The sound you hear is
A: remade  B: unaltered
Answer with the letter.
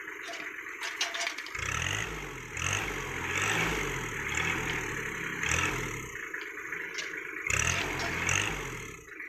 B